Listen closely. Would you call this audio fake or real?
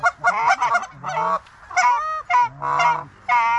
real